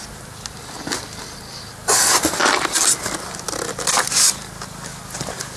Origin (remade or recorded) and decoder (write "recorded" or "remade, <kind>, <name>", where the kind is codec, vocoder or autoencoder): recorded